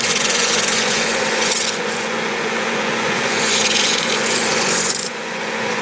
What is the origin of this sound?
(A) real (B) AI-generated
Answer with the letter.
B